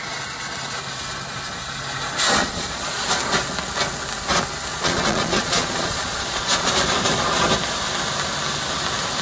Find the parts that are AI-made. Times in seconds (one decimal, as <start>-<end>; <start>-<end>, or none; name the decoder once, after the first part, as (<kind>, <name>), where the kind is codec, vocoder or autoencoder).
2.4-3.0 (vocoder, Vocos); 4.7-6.7